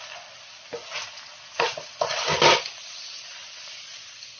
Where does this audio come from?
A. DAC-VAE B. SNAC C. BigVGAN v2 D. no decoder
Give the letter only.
D